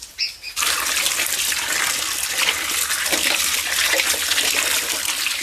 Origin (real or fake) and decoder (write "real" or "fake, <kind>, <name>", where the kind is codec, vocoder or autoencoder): real